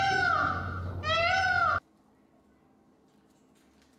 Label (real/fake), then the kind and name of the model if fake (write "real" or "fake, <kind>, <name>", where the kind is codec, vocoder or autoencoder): real